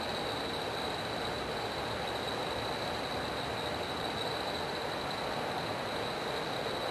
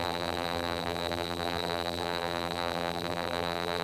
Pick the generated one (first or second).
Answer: second